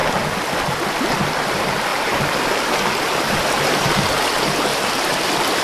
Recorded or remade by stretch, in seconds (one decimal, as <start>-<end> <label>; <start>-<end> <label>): 0.0-1.5 recorded; 1.5-5.6 remade